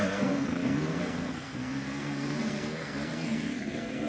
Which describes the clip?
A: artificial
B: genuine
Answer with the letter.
A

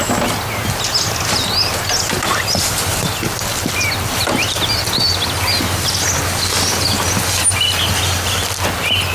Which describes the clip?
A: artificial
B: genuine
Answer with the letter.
B